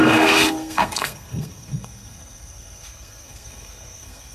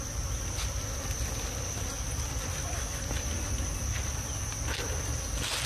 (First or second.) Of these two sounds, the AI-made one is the first